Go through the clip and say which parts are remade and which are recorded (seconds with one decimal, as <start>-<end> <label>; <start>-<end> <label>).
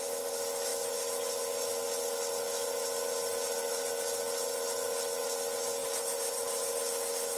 0.0-5.8 recorded; 5.8-6.8 remade; 6.8-7.4 recorded